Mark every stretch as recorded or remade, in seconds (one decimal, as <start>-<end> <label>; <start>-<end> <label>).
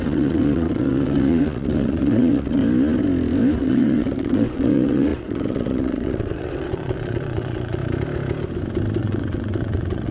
0.0-2.6 remade; 2.6-3.6 recorded; 3.6-7.8 remade; 7.8-9.0 recorded; 9.0-10.1 remade